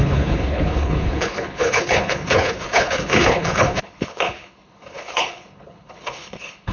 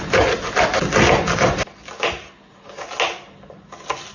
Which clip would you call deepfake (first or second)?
first